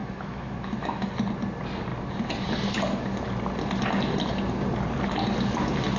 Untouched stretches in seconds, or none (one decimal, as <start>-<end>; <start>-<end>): 1.1-6.0